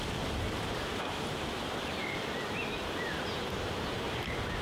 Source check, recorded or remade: recorded